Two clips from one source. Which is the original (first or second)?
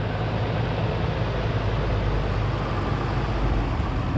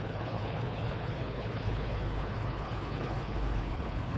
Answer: first